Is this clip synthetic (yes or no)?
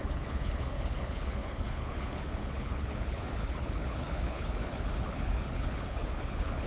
yes